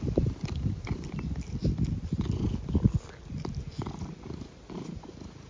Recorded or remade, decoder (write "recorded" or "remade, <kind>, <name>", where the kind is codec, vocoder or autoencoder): recorded